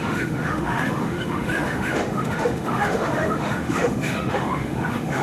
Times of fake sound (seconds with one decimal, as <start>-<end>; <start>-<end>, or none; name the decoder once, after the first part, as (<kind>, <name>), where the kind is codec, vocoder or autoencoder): 0.0-5.2 (autoencoder, DAC-VAE)